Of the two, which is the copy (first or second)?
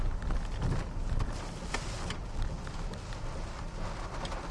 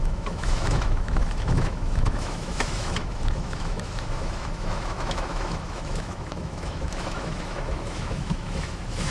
second